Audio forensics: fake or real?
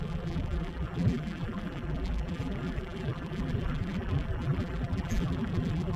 fake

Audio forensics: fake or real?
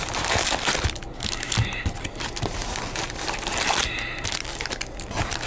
real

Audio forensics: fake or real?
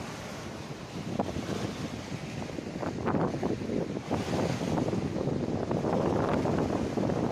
real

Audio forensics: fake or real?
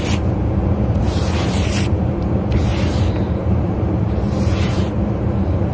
fake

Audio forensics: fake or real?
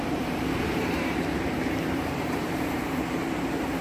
fake